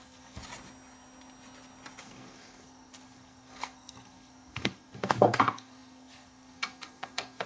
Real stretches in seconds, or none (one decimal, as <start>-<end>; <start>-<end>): 0.4-2.0